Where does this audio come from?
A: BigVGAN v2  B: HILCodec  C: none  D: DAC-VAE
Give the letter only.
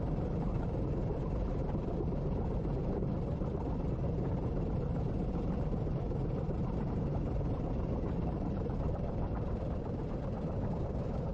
A